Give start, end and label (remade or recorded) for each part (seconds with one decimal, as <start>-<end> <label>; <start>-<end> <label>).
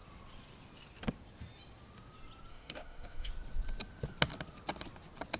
0.0-2.5 recorded; 2.5-3.3 remade; 3.3-5.4 recorded